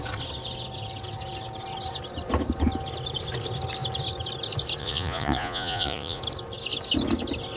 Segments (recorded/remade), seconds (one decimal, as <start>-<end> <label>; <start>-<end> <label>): 0.0-4.8 recorded; 4.8-6.2 remade; 6.2-7.6 recorded